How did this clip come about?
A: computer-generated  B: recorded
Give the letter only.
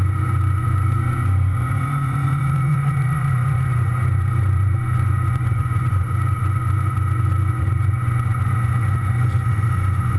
A